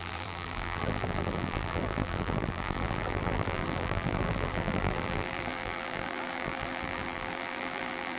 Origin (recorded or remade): remade